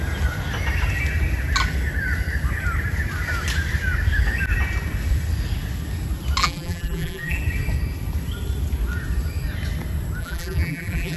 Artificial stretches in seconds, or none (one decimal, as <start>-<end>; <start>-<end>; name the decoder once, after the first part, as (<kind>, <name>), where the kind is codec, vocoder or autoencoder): 6.4-7.4 (vocoder, BigVGAN v2); 10.2-11.2